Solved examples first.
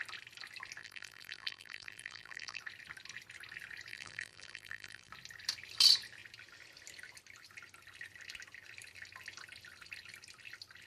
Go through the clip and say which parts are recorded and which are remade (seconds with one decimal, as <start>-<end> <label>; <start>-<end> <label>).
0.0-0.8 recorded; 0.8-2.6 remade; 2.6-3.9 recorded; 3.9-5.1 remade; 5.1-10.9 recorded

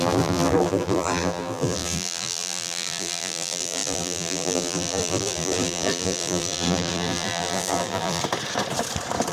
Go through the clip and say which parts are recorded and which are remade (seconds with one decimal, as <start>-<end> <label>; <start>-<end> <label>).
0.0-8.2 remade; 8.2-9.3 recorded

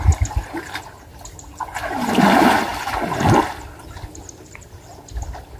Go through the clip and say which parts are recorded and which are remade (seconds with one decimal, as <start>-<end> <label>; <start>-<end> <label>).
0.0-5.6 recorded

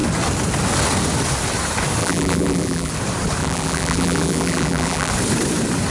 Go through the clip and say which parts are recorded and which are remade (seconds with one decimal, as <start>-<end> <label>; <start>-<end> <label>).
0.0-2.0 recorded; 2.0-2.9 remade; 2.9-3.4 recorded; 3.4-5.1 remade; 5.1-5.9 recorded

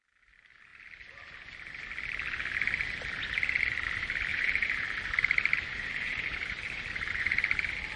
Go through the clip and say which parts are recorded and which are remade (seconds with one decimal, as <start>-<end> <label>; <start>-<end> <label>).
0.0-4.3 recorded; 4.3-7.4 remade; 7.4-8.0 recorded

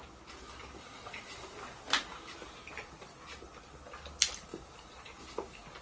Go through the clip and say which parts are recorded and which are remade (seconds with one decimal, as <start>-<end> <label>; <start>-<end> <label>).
0.0-3.5 remade; 3.5-4.5 recorded; 4.5-5.2 remade; 5.2-5.8 recorded